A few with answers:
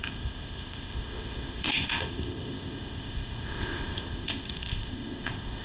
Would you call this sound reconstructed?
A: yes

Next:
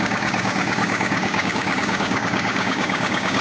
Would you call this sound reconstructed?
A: yes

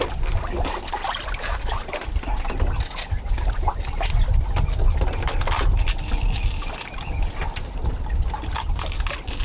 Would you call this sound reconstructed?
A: no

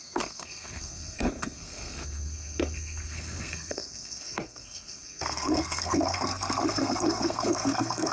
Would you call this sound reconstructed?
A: yes